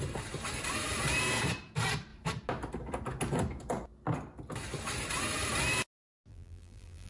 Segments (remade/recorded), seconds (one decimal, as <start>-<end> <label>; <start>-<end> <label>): 0.0-6.3 recorded; 6.3-7.1 remade